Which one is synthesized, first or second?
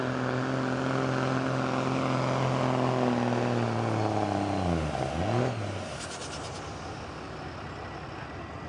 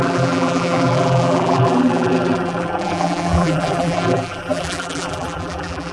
second